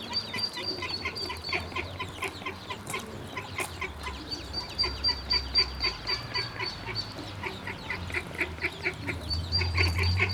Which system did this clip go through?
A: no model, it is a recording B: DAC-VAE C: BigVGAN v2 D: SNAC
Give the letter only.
C